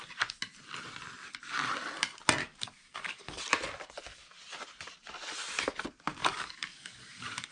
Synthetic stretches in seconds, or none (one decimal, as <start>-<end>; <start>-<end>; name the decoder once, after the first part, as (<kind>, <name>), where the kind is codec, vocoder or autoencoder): 2.4-3.4 (codec, DAC); 6.2-7.5